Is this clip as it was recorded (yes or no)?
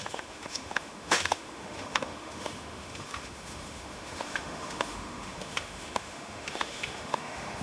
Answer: no